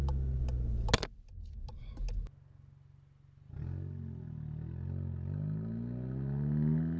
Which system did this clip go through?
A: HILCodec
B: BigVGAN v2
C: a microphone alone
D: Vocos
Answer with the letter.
C